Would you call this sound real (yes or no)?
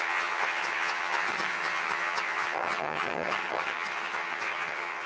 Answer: no